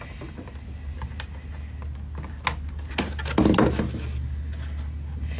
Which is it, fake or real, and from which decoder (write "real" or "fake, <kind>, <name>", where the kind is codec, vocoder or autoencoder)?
real